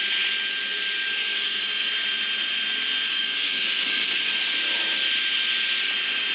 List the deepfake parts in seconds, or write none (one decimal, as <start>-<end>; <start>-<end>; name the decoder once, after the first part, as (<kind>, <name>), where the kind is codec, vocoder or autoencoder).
1.2-1.9 (codec, DAC); 3.1-4.3